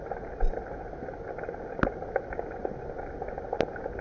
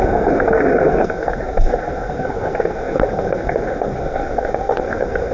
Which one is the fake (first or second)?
second